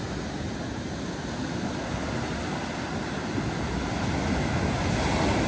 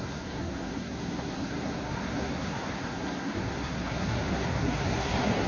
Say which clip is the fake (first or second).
second